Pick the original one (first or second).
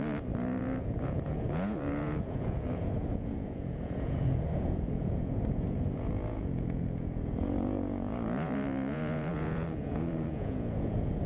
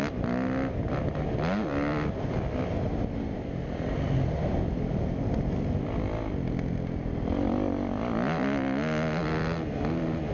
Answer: second